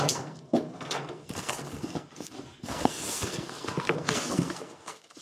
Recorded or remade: remade